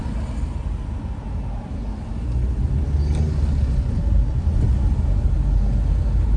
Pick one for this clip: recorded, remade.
recorded